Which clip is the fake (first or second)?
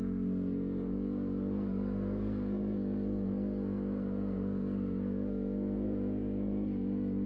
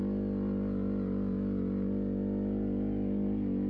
first